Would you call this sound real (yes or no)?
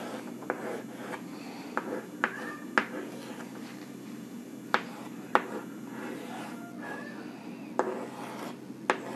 yes